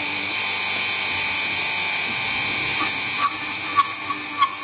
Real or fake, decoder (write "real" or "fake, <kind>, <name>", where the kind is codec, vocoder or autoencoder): real